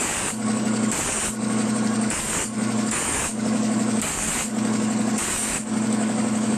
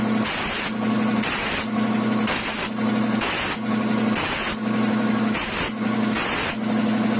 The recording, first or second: second